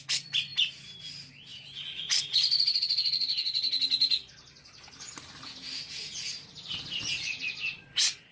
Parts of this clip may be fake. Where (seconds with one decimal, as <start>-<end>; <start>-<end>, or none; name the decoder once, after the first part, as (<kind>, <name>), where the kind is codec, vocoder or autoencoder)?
0.5-1.0 (vocoder, BigVGAN v2); 1.5-2.2